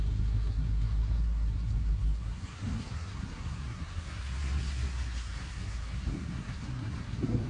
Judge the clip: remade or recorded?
remade